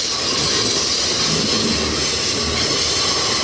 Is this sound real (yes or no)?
yes